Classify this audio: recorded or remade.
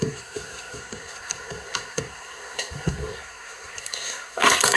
remade